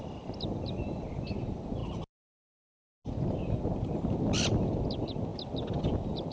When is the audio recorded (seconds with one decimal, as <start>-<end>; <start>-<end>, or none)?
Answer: 0.0-6.3